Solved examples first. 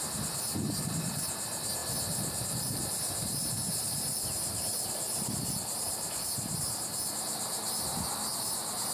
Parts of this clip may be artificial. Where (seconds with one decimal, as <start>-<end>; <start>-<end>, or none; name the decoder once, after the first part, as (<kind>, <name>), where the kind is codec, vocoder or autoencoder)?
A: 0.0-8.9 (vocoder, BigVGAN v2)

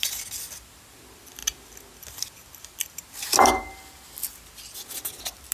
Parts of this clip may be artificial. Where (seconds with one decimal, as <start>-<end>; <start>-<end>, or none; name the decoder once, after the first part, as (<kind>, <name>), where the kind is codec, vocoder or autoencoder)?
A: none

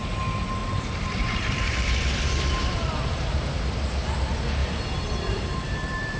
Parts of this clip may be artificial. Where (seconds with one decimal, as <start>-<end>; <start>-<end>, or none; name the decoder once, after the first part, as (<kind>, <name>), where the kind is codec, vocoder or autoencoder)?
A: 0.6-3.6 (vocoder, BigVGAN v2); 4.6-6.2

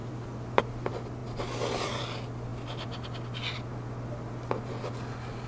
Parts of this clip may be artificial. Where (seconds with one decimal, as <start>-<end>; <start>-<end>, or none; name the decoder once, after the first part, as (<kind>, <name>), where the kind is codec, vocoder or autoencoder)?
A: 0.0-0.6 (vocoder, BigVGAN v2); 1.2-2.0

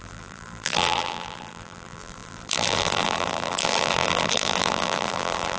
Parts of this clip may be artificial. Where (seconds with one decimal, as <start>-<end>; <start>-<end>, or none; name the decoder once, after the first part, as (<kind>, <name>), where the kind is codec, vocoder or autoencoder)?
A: 0.0-5.6 (vocoder, BigVGAN v2)